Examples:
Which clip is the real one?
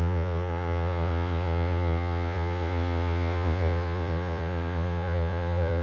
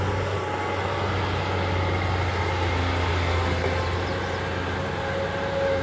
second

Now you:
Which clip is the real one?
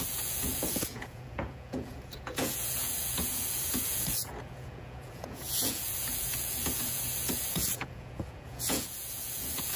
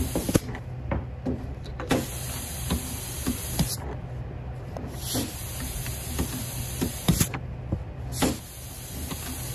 second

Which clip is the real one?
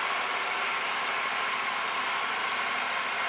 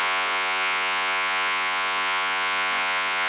first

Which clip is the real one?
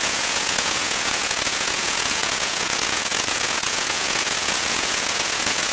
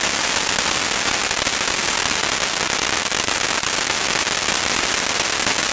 second